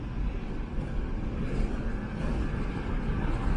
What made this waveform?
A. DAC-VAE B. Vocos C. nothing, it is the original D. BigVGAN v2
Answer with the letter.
C